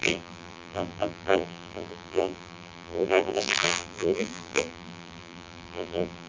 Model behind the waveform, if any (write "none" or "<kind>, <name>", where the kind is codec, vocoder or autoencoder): vocoder, BigVGAN v2